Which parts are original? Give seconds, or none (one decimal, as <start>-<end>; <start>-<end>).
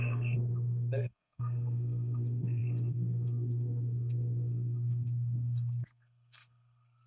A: none